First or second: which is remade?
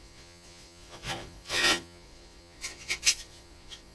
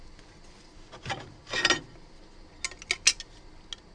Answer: first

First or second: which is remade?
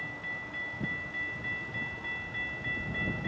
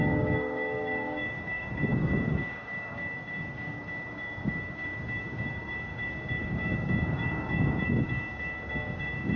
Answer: second